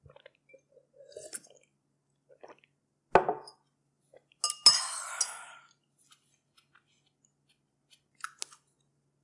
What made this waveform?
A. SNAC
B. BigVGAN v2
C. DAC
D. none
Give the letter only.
D